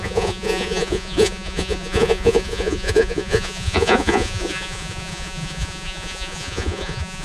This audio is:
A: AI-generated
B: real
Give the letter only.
A